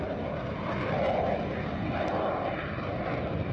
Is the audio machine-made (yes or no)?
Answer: no